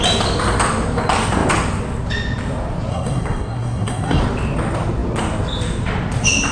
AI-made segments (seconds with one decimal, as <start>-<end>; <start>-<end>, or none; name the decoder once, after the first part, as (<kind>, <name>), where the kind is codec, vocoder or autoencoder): 2.9-4.2 (codec, SNAC)